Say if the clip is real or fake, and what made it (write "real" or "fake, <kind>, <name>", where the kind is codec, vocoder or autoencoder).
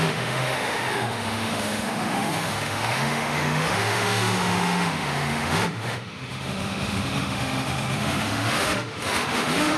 fake, autoencoder, DAC-VAE